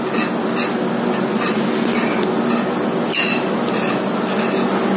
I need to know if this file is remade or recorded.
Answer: recorded